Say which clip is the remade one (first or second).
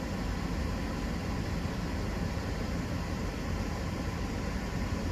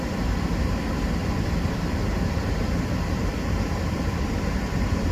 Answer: second